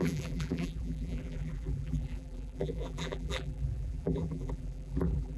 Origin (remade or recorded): remade